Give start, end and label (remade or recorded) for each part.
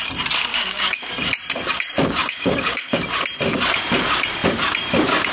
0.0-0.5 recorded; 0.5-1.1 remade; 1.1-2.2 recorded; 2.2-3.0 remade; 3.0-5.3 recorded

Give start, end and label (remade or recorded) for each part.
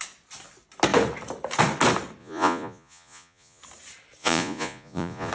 0.0-2.2 recorded; 2.2-3.6 remade; 3.6-4.2 recorded; 4.2-5.3 remade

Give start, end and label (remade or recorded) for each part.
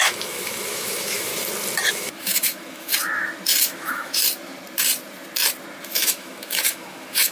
0.0-1.3 remade; 1.3-1.9 recorded; 1.9-2.9 remade; 2.9-3.6 recorded; 3.6-4.2 remade; 4.2-5.8 recorded; 5.8-7.3 remade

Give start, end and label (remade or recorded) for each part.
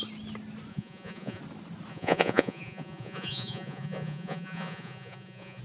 0.0-0.7 recorded; 0.7-1.4 remade; 1.4-1.9 recorded; 1.9-5.6 remade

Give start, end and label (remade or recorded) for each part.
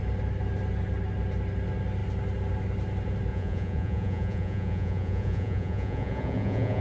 0.0-3.3 recorded; 3.3-6.8 remade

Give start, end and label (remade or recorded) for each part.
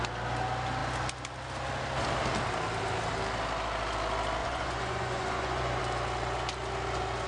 0.0-4.4 recorded; 4.4-5.8 remade; 5.8-7.3 recorded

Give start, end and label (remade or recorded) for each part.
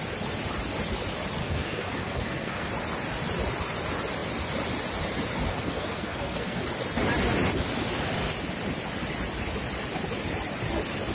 0.0-1.4 recorded; 1.4-2.7 remade; 2.7-5.5 recorded; 5.5-6.6 remade; 6.6-11.1 recorded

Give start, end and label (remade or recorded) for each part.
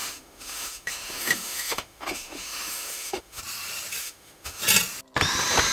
0.0-3.4 remade; 3.4-4.0 recorded; 4.0-4.6 remade; 4.6-5.7 recorded